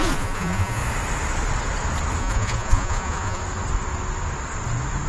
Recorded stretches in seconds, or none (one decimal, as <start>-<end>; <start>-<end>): 0.8-2.2; 3.4-5.1